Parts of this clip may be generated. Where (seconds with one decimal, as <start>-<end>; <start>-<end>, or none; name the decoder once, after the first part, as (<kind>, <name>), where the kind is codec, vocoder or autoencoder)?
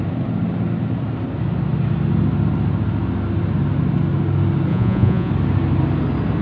4.7-5.3 (vocoder, Vocos)